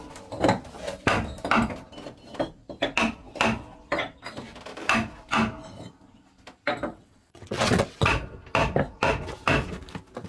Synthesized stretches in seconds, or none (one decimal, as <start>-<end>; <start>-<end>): 6.9-8.1